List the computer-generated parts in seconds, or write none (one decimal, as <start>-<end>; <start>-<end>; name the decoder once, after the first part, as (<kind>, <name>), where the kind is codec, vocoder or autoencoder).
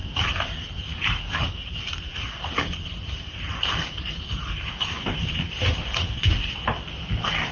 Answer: 0.0-2.5 (vocoder, BigVGAN v2); 2.9-5.7